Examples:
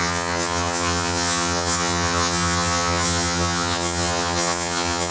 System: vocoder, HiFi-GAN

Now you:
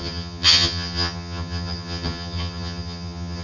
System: vocoder, HiFi-GAN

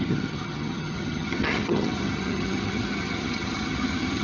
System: vocoder, HiFi-GAN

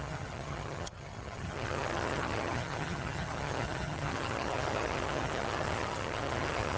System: vocoder, HiFi-GAN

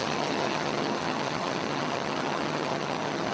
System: vocoder, HiFi-GAN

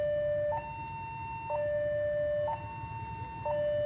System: none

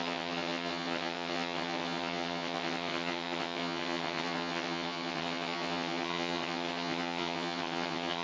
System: vocoder, HiFi-GAN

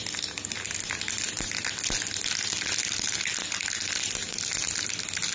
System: none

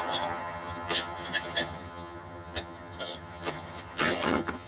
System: vocoder, HiFi-GAN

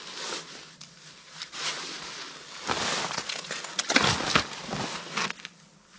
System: none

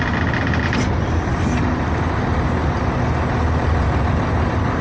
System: none